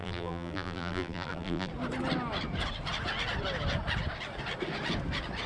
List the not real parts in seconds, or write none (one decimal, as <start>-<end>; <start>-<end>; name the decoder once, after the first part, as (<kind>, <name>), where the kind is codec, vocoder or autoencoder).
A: 0.0-1.7 (vocoder, BigVGAN v2)